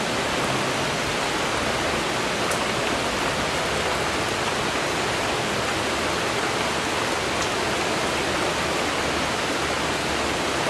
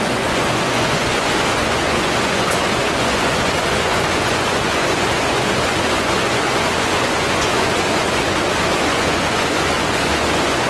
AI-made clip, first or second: second